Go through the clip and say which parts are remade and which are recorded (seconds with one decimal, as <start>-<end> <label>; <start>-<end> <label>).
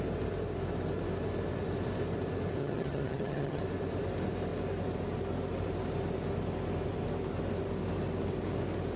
0.0-2.6 recorded; 2.6-3.6 remade; 3.6-9.0 recorded